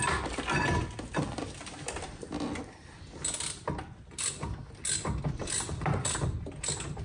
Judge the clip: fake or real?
real